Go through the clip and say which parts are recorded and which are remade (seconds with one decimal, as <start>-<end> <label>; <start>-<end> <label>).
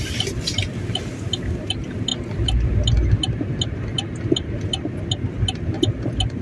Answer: 0.0-6.4 recorded